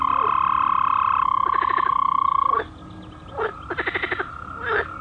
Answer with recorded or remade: recorded